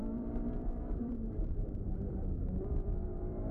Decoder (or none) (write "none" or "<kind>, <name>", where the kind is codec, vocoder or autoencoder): vocoder, BigVGAN v2